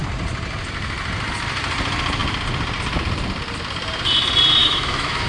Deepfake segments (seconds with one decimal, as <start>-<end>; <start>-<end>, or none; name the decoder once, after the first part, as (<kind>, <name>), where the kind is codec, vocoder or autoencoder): 4.6-5.3 (autoencoder, DAC-VAE)